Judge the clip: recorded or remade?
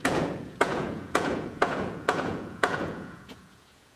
remade